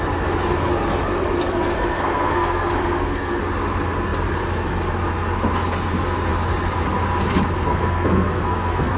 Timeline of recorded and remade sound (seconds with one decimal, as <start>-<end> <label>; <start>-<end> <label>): 0.0-1.7 recorded; 1.7-3.4 remade; 3.4-7.7 recorded; 7.7-9.0 remade

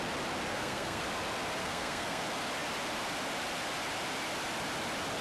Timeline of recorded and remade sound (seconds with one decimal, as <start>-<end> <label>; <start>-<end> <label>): 0.0-0.5 recorded; 0.5-1.0 remade; 1.0-1.6 recorded; 1.6-2.2 remade; 2.2-5.2 recorded

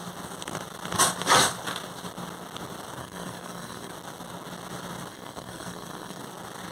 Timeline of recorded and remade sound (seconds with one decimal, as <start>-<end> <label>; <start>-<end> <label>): 0.0-3.0 recorded; 3.0-3.9 remade; 3.9-5.1 recorded; 5.1-6.2 remade; 6.2-6.7 recorded